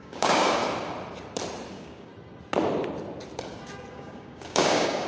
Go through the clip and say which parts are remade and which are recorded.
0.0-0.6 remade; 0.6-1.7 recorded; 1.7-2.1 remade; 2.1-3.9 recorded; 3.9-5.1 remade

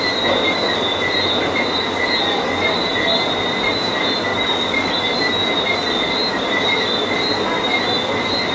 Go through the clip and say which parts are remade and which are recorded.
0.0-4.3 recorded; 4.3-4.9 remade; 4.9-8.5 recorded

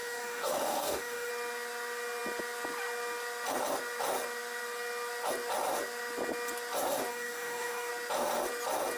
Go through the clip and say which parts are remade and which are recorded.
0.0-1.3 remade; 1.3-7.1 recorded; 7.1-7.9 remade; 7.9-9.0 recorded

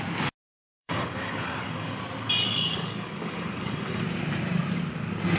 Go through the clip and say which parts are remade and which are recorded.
0.0-0.5 recorded; 0.5-2.0 remade; 2.0-2.4 recorded; 2.4-4.0 remade; 4.0-5.4 recorded

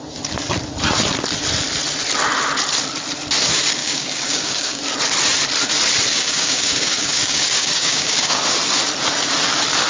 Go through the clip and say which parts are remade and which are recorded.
0.0-3.8 recorded; 3.8-4.8 remade; 4.8-6.1 recorded; 6.1-8.4 remade; 8.4-9.9 recorded

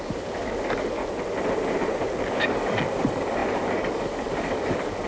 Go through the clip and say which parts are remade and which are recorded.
0.0-1.0 remade; 1.0-2.3 recorded; 2.3-5.1 remade